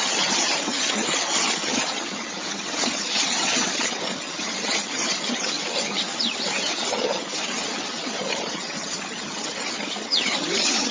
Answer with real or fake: fake